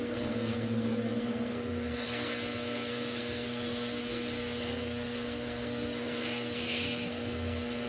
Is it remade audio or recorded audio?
remade